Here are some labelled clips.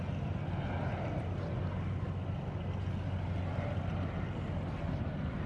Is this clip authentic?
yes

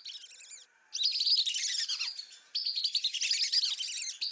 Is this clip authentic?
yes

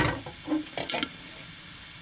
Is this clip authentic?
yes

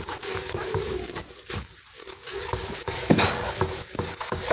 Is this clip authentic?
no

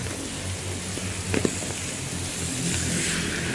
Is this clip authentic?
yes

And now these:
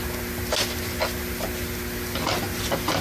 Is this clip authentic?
yes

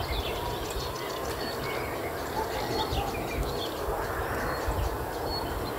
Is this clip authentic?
yes